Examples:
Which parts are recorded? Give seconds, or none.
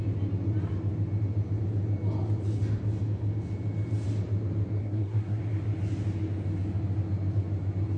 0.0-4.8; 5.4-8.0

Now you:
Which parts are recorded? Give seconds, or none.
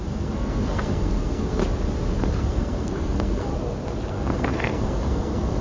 1.6-2.2; 3.5-4.1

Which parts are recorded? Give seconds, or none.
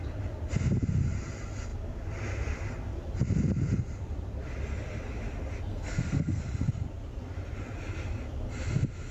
0.0-5.7; 6.4-9.1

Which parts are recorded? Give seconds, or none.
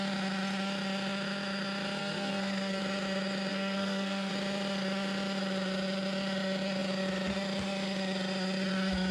0.0-2.0; 2.8-3.5; 4.3-9.1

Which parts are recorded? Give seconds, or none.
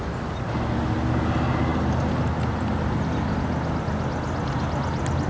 0.0-5.3